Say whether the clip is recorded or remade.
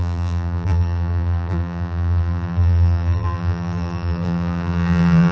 remade